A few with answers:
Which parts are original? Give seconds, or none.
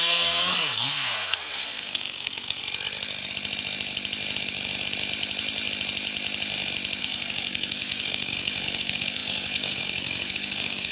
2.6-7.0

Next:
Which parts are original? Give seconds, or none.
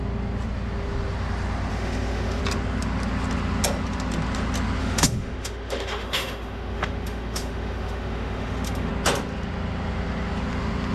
0.0-1.7; 2.4-4.8; 8.9-10.9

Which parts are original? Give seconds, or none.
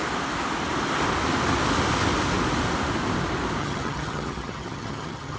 0.0-3.6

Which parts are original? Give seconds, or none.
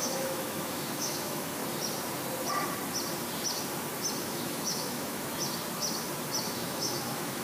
1.6-4.2; 5.3-6.4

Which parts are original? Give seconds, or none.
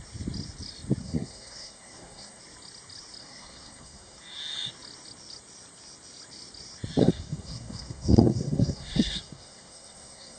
0.0-1.0; 2.4-3.2; 4.2-7.0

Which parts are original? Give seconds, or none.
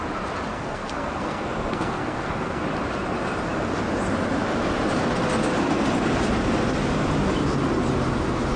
0.0-0.5; 2.6-8.6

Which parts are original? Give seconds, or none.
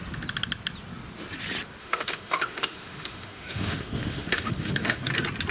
0.0-1.8; 5.1-5.5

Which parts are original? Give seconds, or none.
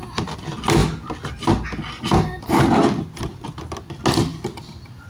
0.0-5.1